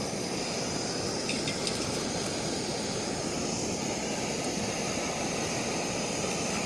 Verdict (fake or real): real